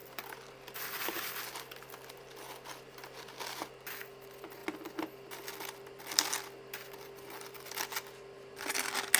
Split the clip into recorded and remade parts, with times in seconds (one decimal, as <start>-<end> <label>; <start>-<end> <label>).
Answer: 0.0-9.2 recorded